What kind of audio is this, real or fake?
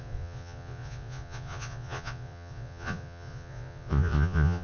fake